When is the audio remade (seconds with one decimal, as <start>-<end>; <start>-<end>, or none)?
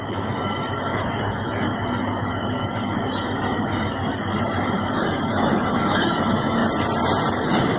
0.0-6.6; 7.3-7.8